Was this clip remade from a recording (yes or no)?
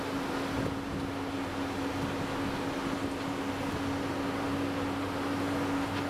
no